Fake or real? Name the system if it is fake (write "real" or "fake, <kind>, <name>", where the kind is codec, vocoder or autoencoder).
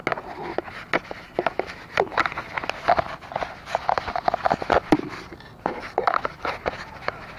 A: real